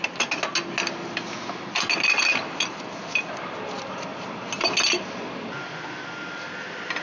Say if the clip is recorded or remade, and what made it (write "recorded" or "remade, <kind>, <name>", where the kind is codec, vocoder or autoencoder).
recorded